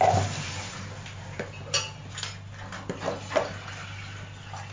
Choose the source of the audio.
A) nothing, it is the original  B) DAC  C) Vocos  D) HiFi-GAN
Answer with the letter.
A